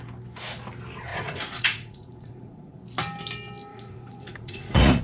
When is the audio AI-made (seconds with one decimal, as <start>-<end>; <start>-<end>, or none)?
1.1-2.8; 3.7-5.0